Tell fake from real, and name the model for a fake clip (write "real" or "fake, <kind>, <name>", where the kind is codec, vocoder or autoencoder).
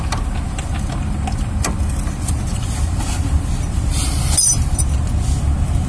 real